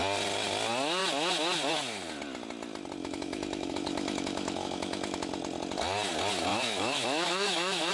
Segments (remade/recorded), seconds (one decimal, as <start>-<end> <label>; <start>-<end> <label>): 0.0-3.0 recorded; 3.0-5.3 remade; 5.3-6.5 recorded; 6.5-7.9 remade